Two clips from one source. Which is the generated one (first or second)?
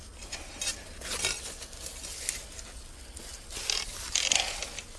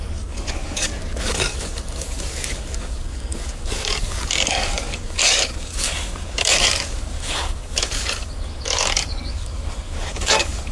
second